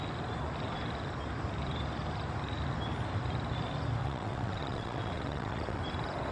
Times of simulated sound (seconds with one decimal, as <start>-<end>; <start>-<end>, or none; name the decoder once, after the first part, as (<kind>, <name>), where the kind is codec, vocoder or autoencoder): 4.0-5.8 (vocoder, WaveNeXt)